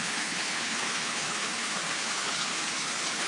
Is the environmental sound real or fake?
fake